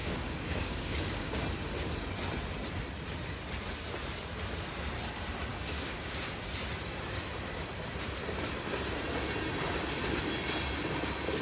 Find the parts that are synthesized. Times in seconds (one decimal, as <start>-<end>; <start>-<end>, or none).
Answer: 0.0-1.3; 5.5-6.3